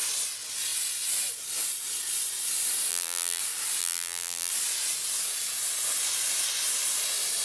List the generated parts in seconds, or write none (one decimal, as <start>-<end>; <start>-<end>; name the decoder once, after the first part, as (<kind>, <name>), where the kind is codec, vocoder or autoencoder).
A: 2.9-3.4 (vocoder, BigVGAN v2); 3.8-4.5